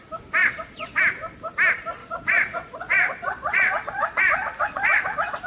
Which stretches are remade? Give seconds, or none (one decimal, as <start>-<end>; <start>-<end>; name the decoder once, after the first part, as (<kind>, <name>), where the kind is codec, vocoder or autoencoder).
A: 0.4-1.0 (vocoder, Vocos); 2.0-5.5

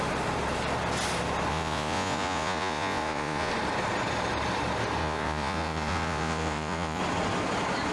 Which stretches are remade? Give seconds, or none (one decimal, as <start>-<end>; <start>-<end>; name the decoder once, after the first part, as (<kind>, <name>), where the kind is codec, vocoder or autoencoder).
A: 1.5-3.5 (vocoder, Vocos); 5.0-7.0

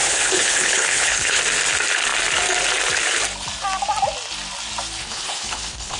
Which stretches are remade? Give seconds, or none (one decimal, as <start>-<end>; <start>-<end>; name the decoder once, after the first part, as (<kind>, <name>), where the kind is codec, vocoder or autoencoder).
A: 0.0-1.4 (codec, HILCodec); 5.0-6.0

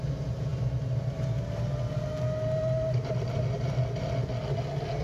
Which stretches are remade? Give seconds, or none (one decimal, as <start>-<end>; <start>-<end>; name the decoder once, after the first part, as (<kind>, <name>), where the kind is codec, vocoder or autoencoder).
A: none

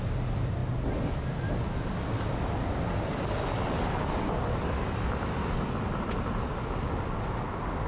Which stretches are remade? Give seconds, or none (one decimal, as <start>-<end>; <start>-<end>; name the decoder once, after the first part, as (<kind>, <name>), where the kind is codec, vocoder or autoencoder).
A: none

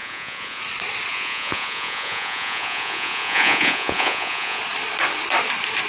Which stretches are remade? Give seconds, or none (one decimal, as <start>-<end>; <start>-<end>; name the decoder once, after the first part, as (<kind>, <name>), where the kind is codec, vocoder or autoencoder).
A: 0.0-0.6 (vocoder, Vocos); 1.1-4.6

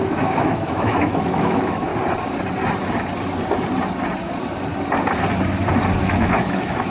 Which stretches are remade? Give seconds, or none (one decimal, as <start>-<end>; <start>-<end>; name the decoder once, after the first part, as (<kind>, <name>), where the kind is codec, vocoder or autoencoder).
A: 0.0-1.9 (autoencoder, DAC-VAE); 6.0-6.9

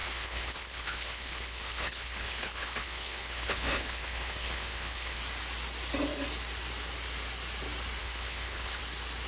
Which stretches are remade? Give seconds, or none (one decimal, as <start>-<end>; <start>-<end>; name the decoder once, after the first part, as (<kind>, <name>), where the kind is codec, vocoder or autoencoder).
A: 0.0-5.2 (codec, HILCodec); 8.0-8.8